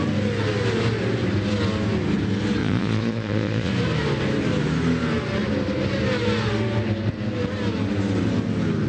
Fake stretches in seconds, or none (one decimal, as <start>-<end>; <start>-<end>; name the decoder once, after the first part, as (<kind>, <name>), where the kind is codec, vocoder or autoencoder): 2.6-3.7 (vocoder, Vocos)